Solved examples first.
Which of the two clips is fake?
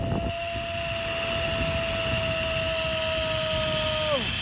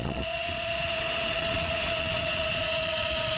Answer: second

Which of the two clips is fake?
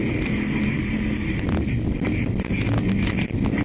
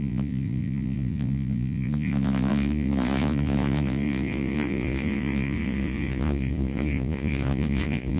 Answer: second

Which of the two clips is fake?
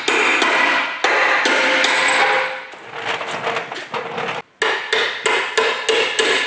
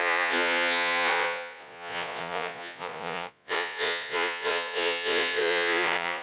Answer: second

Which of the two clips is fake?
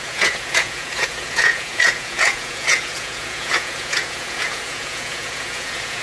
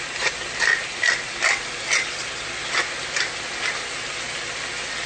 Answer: first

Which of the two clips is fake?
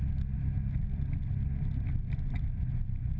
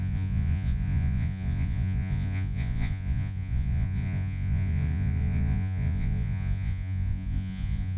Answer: second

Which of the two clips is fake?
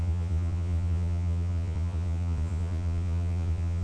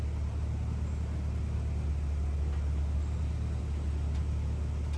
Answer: first